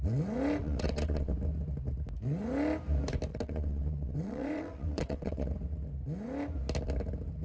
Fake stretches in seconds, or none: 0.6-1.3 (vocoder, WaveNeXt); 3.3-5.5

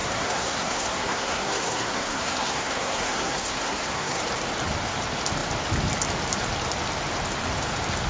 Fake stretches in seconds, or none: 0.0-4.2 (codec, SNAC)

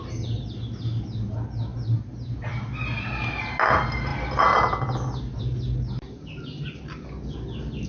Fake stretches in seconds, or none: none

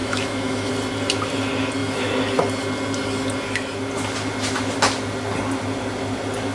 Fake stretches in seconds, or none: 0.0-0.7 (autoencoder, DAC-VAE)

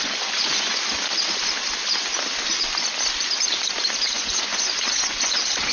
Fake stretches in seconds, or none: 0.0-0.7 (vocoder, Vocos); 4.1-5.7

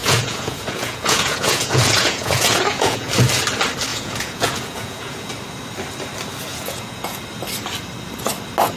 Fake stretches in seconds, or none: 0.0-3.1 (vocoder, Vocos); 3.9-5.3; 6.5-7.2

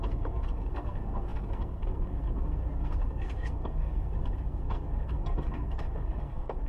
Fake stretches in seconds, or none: 0.0-6.7 (codec, SNAC)